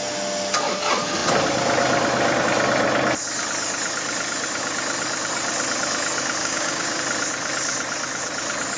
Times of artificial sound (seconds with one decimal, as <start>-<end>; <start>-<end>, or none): 6.4-7.0